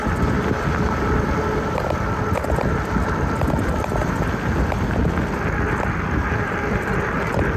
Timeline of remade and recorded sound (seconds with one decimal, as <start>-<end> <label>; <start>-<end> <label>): 0.0-7.6 recorded